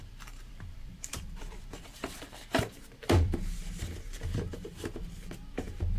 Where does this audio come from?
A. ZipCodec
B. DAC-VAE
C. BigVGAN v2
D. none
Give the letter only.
C